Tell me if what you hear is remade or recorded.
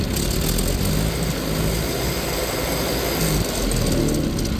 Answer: recorded